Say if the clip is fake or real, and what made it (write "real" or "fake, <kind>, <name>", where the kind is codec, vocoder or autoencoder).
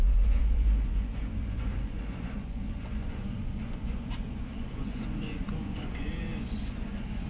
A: fake, vocoder, Vocos